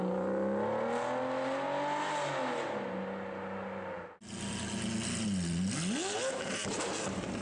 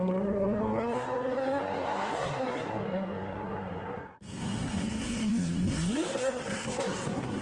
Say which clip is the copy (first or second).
second